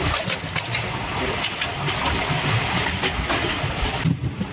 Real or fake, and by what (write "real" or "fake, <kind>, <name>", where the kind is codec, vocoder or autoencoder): real